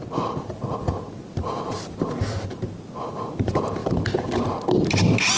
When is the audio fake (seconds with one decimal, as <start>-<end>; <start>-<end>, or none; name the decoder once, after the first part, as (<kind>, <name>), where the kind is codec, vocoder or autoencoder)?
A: 3.8-4.5 (vocoder, BigVGAN v2)